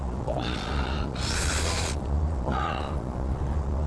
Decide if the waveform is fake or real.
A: fake